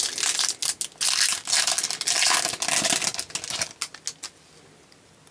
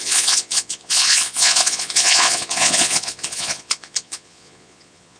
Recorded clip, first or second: first